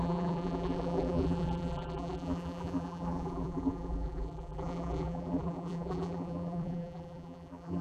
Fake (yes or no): yes